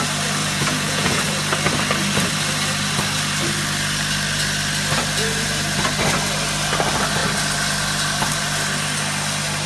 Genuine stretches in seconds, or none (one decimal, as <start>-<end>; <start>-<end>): 0.0-0.4; 1.2-9.7